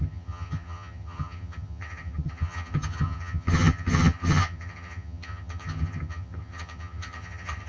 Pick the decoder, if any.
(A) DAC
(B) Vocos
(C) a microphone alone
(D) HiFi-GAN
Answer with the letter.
D